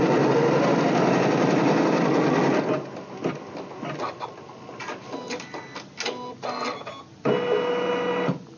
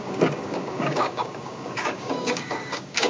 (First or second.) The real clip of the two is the first